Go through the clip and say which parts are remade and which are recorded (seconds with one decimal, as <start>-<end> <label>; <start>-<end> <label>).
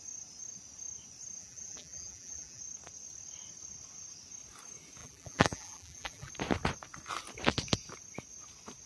0.0-1.4 recorded; 1.4-2.6 remade; 2.6-5.0 recorded; 5.0-6.3 remade; 6.3-8.9 recorded